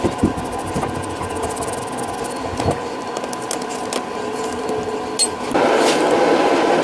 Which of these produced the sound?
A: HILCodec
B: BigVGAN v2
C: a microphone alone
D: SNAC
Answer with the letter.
C